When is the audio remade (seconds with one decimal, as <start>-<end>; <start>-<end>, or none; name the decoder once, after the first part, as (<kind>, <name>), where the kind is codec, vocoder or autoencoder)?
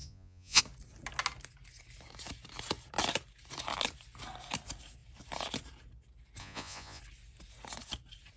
0.0-0.6 (vocoder, Vocos); 6.4-7.0